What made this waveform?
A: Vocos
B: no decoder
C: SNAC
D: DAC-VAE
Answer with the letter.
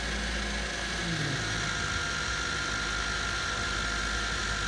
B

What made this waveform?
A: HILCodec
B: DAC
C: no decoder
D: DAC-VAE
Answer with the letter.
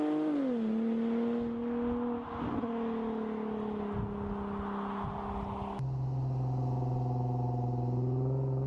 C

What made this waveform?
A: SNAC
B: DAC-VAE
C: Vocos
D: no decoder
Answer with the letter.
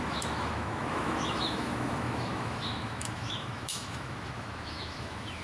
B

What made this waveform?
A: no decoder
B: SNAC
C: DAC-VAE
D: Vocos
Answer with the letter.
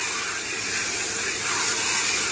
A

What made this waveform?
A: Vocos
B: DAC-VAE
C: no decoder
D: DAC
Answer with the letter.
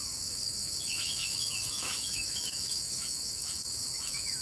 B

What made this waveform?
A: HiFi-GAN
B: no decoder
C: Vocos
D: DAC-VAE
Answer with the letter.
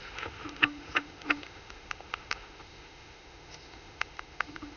D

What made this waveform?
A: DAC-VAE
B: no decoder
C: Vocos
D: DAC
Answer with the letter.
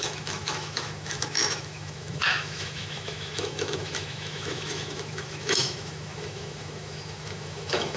A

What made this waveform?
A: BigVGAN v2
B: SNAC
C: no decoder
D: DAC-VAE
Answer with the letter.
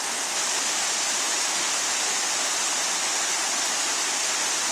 C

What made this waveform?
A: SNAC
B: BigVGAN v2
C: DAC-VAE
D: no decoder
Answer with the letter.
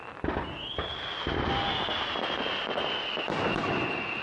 D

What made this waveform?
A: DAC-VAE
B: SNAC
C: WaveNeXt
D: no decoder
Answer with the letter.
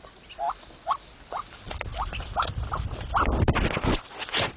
D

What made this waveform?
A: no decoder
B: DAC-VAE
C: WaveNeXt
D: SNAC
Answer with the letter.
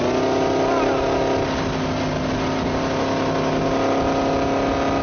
A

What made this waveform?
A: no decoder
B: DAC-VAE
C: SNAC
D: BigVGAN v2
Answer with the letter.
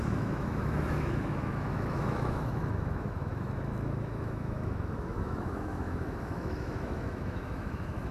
B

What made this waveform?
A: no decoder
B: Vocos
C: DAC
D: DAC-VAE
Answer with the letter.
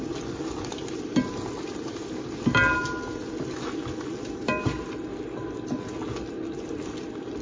A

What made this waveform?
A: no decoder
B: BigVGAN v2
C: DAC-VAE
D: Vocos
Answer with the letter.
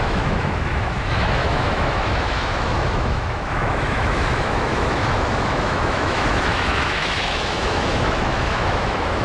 C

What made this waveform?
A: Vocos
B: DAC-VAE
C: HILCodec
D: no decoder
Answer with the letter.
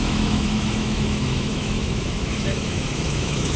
B